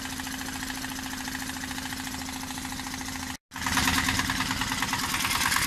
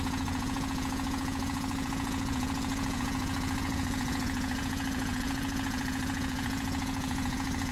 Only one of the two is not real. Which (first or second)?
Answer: second